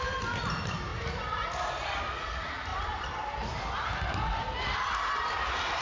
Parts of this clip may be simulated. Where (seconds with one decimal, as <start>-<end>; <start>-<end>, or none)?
2.7-3.6